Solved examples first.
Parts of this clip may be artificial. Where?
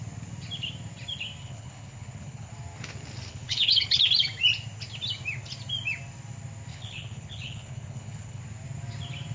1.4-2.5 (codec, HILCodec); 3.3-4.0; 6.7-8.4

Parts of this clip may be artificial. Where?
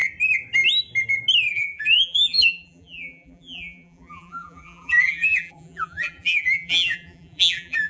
1.5-7.9 (vocoder, BigVGAN v2)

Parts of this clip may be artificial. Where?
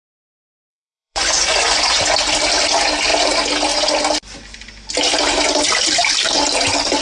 0.7-2.0 (vocoder, Vocos)